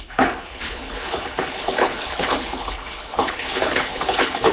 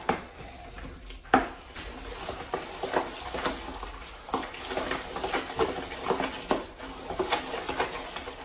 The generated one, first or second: first